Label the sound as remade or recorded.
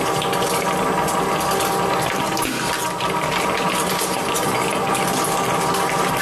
recorded